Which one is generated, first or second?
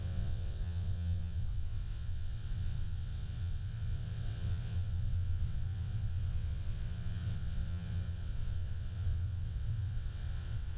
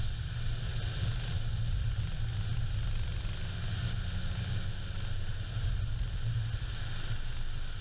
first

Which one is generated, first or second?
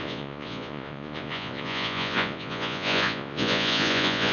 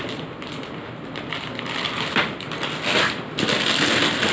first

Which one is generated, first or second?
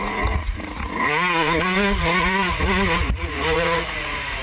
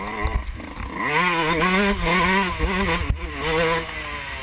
first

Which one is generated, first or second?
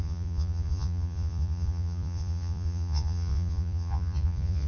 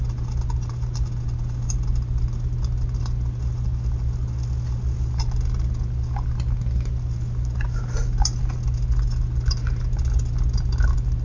first